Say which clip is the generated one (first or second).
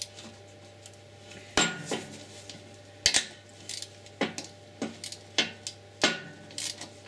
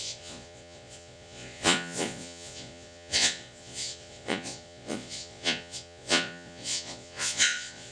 second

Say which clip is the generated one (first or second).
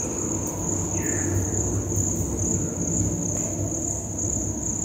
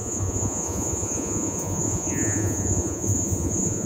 second